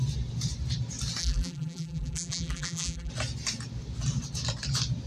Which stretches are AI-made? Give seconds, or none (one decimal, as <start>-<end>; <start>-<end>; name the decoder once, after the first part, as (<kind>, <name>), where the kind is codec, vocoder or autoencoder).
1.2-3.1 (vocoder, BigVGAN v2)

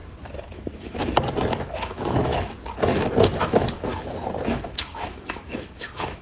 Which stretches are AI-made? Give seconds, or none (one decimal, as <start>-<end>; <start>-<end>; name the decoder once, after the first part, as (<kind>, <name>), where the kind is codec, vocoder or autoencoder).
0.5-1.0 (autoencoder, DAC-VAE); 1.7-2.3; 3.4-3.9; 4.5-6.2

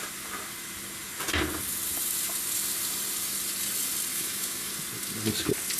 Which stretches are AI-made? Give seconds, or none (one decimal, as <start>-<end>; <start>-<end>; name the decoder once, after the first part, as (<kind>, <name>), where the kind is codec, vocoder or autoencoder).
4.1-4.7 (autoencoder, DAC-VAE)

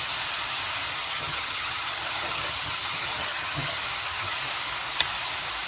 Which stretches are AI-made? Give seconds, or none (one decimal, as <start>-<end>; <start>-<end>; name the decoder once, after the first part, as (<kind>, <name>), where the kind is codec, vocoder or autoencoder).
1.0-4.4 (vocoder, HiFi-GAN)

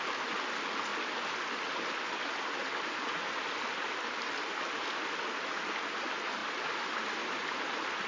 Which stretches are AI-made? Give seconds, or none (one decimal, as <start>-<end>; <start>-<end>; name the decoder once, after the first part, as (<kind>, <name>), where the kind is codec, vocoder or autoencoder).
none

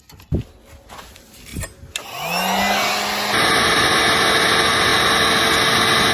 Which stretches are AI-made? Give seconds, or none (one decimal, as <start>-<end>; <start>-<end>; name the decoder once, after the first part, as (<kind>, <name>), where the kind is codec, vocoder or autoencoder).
none

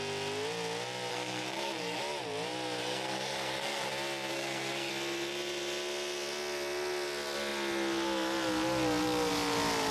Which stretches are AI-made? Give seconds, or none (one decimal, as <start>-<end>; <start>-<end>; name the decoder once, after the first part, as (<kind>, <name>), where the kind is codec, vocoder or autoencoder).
1.1-2.0 (codec, SNAC); 2.8-3.9; 4.3-4.9

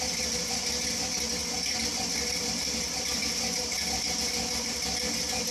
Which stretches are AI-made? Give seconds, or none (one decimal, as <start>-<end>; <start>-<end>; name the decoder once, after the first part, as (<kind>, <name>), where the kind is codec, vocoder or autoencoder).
none